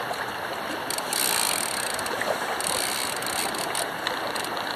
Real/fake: real